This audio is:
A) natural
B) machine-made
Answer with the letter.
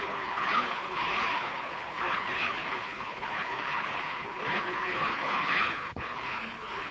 B